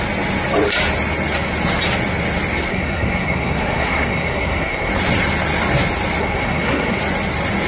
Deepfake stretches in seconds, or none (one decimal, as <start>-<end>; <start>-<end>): 2.7-4.9; 6.2-7.0